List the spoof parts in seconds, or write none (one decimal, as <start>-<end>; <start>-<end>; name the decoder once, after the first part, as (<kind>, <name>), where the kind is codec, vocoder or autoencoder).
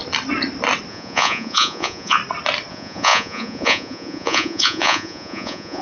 0.9-2.2 (vocoder, Vocos); 2.7-5.8